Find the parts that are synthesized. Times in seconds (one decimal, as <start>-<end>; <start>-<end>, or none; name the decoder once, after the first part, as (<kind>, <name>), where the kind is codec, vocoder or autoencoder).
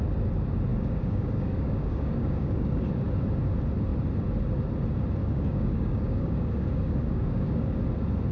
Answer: 0.7-2.9 (codec, DAC); 5.2-7.8